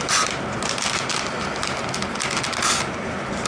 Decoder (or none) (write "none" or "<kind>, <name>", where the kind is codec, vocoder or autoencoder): none